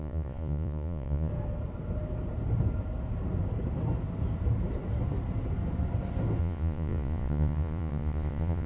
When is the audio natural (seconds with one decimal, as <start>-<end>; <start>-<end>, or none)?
1.3-6.4